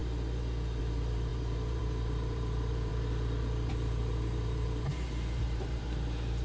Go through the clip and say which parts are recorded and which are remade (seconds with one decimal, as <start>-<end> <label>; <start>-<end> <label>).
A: 0.0-0.8 recorded; 0.8-2.9 remade; 2.9-3.7 recorded; 3.7-6.4 remade